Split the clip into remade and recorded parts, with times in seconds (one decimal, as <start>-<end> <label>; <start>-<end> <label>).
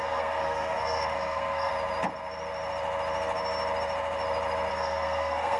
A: 0.0-1.7 remade; 1.7-4.7 recorded; 4.7-5.6 remade